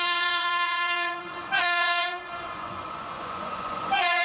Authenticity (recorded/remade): remade